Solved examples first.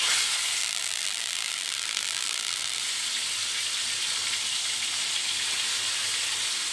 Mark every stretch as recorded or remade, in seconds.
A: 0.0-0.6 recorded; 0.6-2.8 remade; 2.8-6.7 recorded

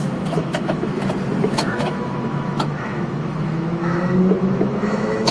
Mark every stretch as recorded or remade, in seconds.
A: 0.0-0.9 remade; 0.9-1.4 recorded; 1.4-5.3 remade

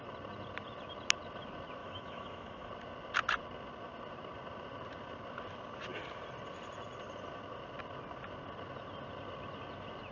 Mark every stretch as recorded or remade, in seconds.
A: 0.0-1.8 recorded; 1.8-2.7 remade; 2.7-10.1 recorded

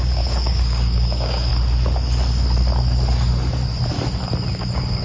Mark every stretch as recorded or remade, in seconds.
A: 0.0-1.5 remade; 1.5-4.5 recorded; 4.5-5.0 remade

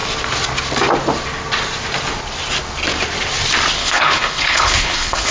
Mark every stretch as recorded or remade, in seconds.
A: 0.0-3.8 recorded; 3.8-5.3 remade

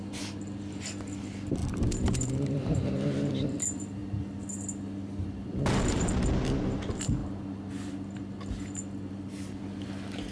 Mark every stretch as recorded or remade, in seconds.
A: 0.0-1.6 recorded; 1.6-3.3 remade; 3.3-10.3 recorded

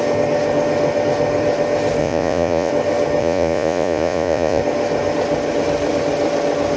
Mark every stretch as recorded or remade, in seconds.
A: 0.0-2.0 recorded; 2.0-2.7 remade; 2.7-3.2 recorded; 3.2-4.6 remade; 4.6-6.8 recorded

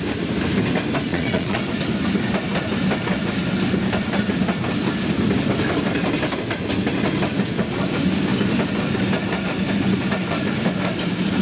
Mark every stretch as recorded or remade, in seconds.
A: 0.0-1.1 recorded; 1.1-1.6 remade; 1.6-11.4 recorded